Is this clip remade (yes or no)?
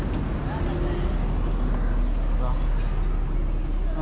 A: no